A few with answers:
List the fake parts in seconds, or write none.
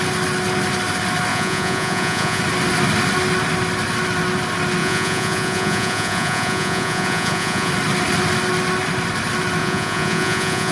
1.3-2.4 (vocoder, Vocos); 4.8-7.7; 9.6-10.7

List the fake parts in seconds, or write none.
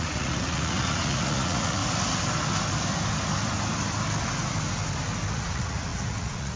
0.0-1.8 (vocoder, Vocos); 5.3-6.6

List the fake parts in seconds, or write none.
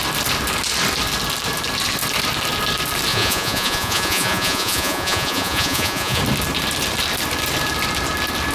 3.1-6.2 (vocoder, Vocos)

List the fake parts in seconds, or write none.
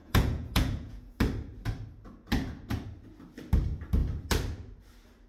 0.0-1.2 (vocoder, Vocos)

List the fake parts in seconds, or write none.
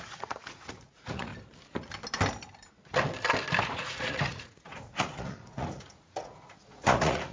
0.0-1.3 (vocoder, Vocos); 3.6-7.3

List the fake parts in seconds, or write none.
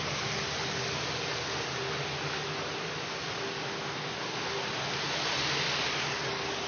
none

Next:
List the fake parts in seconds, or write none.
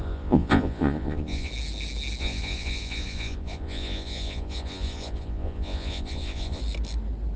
0.0-1.5 (vocoder, Vocos); 2.2-6.6